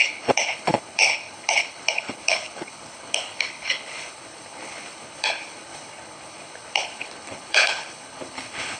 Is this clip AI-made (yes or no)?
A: yes